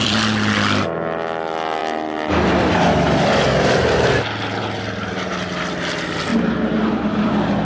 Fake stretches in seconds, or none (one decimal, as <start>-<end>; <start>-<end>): 0.0-7.6